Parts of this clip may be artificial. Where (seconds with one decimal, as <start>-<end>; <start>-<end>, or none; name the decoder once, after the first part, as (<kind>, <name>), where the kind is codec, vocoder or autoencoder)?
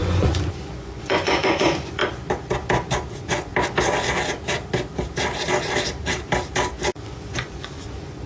0.0-2.0 (vocoder, Vocos); 3.1-3.5; 6.7-8.3